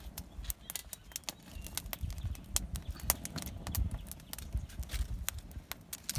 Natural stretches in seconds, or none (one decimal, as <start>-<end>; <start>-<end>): 0.0-6.2